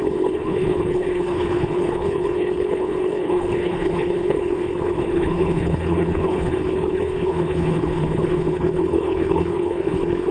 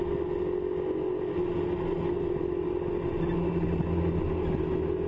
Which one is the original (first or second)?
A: second